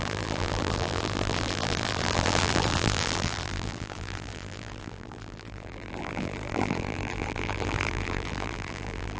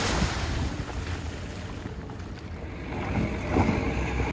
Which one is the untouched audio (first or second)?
second